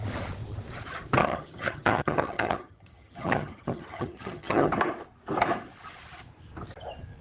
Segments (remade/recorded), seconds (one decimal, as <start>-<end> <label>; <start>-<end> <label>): 0.0-1.2 recorded; 1.2-4.7 remade; 4.7-7.2 recorded